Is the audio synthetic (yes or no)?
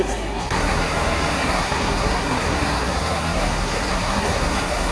yes